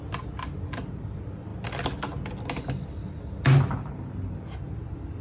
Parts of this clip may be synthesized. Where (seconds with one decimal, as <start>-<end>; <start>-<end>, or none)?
none